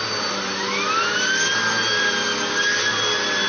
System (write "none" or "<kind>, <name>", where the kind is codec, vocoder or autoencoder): none